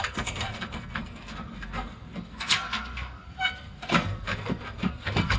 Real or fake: fake